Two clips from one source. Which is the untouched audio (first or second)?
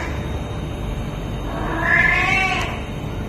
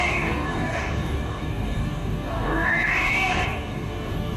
first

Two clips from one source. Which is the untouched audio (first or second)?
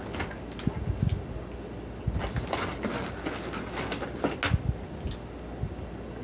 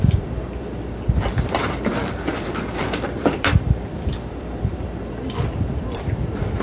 first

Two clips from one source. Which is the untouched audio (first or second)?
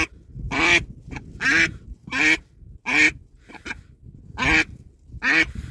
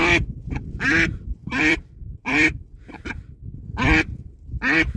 first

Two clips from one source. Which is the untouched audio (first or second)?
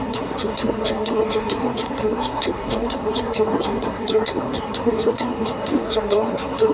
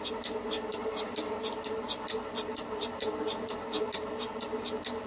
second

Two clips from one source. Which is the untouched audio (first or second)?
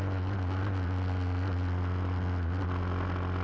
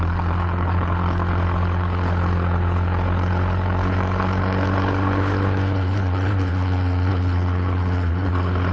first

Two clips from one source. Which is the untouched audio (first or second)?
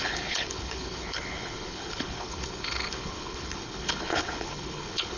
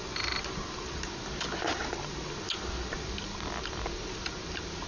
second